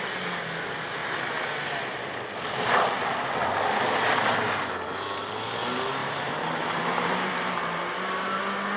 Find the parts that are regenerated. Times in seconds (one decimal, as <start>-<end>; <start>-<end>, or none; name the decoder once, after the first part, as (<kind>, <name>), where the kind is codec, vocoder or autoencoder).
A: 6.0-8.4 (vocoder, BigVGAN v2)